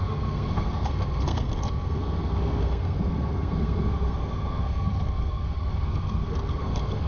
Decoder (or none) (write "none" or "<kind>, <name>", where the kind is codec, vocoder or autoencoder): codec, SNAC